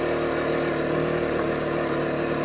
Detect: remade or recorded recorded